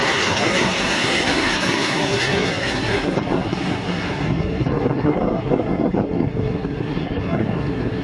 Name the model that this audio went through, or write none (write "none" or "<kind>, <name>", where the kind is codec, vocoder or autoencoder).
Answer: codec, SNAC